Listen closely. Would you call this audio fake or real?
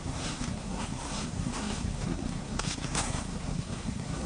fake